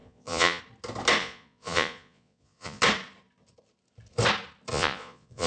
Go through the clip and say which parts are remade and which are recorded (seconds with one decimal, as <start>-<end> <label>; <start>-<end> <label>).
0.0-0.6 remade; 0.6-1.2 recorded; 1.2-2.8 remade; 2.8-4.7 recorded; 4.7-5.5 remade